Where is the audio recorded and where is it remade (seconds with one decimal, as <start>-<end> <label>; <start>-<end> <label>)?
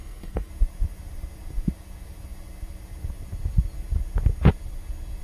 0.0-0.5 remade; 0.5-5.2 recorded